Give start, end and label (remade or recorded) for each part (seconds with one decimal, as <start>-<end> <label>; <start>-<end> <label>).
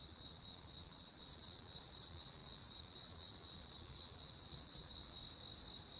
0.0-5.2 remade; 5.2-6.0 recorded